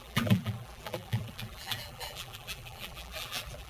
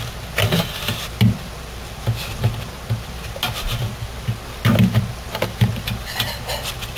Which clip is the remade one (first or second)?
first